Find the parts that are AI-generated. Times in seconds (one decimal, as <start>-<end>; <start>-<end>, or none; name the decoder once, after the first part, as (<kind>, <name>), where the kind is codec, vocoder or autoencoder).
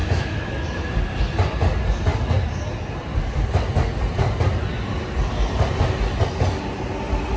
0.0-0.5 (autoencoder, DAC-VAE)